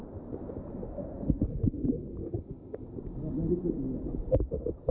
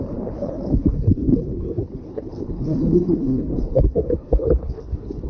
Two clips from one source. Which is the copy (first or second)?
second